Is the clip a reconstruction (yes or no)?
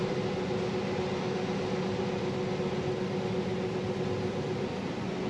no